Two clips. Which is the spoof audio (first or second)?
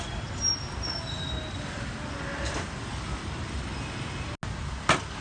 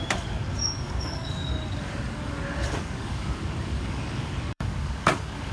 second